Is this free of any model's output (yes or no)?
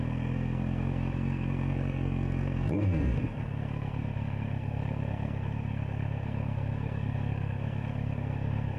no